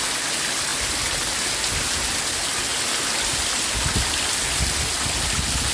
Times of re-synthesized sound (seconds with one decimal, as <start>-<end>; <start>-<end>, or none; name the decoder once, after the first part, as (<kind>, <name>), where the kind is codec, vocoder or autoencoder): none